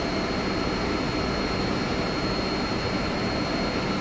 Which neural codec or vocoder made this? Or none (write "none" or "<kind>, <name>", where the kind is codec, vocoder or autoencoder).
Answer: none